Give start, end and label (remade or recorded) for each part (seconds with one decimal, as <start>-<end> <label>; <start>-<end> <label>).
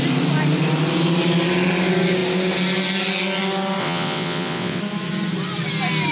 0.0-3.8 recorded; 3.8-4.8 remade; 4.8-6.1 recorded